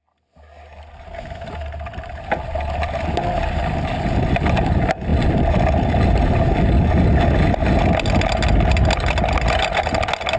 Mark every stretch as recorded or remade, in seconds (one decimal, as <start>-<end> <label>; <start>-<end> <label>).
0.0-10.4 recorded